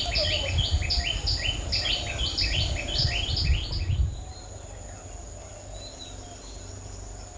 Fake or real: real